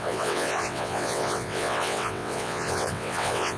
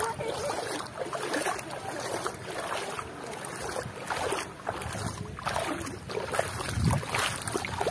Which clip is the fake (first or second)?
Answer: first